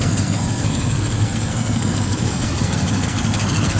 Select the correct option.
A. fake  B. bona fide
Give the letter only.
A